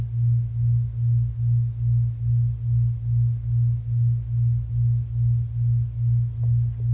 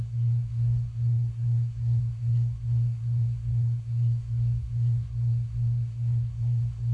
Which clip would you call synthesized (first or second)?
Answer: second